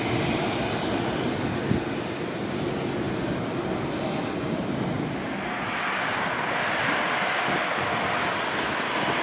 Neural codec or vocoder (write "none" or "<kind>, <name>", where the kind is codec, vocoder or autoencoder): none